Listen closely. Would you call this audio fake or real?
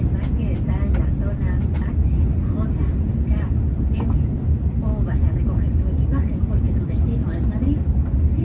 real